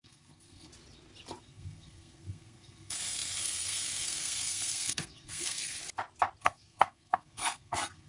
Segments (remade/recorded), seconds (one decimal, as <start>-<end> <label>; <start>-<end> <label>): 0.0-0.7 remade; 0.7-1.4 recorded; 1.4-5.8 remade; 5.8-6.4 recorded; 6.4-8.1 remade

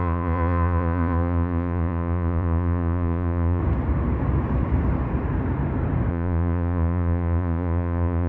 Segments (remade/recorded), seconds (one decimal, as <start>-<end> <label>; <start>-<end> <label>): 0.0-3.6 remade; 3.6-6.1 recorded; 6.1-8.3 remade